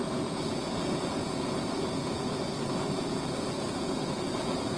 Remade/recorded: remade